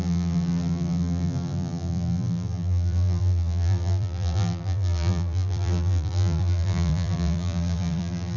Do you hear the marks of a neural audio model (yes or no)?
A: yes